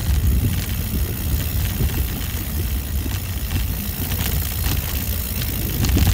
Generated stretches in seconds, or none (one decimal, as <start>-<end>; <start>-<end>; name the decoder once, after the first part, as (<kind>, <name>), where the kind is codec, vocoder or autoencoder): none